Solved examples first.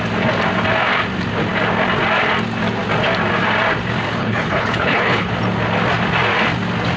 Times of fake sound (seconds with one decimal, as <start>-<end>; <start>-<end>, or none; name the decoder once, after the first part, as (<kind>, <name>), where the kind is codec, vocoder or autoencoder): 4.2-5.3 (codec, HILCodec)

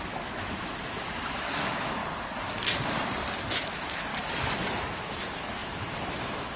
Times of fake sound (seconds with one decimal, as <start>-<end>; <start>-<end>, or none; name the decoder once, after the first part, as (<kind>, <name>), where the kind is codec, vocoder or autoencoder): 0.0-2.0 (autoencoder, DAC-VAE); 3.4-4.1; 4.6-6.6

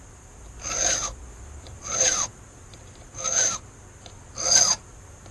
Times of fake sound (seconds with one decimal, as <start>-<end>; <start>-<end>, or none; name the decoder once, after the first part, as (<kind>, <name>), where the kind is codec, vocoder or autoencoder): 0.0-1.2 (vocoder, BigVGAN v2); 2.0-3.1; 4.7-5.3

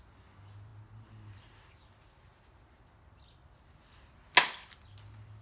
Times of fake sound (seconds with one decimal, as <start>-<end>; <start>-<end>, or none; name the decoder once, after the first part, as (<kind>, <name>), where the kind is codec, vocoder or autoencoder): none

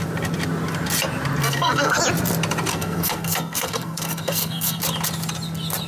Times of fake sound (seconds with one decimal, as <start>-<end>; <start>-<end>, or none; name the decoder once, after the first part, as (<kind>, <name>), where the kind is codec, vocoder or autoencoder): 1.4-2.0 (codec, SNAC); 2.7-4.8

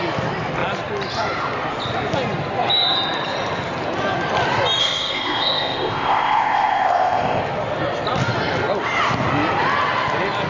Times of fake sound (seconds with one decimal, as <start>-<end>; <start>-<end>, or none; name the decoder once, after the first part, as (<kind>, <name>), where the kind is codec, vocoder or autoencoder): 4.8-7.4 (codec, ZipCodec)

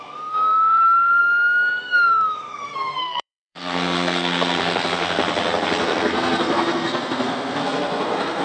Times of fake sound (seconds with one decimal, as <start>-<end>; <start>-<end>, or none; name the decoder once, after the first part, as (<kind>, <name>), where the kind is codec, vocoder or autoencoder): 0.0-1.2 (codec, SNAC); 1.8-5.2; 5.8-8.4